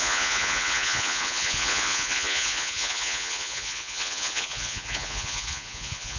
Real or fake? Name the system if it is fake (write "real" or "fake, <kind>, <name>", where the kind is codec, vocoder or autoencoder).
fake, vocoder, Vocos